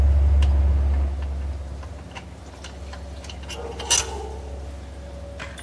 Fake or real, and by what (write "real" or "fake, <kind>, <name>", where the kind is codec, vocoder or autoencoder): real